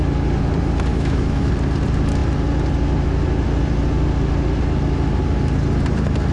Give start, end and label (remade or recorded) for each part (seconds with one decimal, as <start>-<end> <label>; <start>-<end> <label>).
0.0-0.9 recorded; 0.9-1.5 remade; 1.5-6.3 recorded